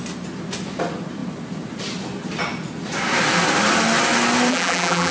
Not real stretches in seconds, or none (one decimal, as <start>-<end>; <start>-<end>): 4.5-5.1